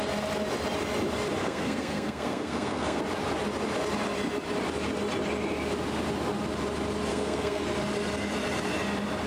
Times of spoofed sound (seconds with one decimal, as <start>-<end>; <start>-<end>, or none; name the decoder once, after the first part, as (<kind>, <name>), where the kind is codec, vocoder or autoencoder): 1.4-3.0 (codec, SNAC); 7.1-7.6